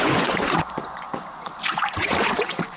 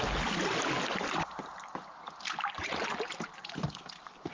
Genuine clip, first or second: second